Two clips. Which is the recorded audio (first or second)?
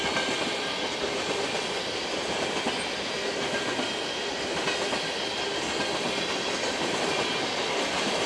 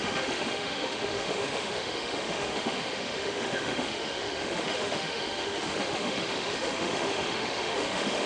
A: first